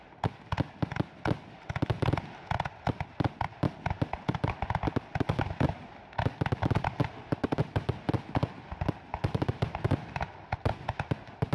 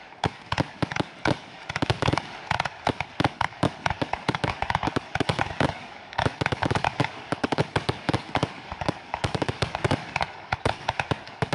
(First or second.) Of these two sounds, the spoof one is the second